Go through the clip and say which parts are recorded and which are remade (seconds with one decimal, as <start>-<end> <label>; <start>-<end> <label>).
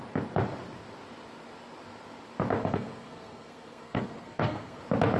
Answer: 0.0-2.6 recorded; 2.6-4.8 remade; 4.8-5.2 recorded